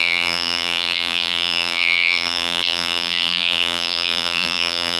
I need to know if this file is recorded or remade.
remade